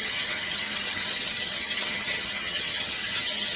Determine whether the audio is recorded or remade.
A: remade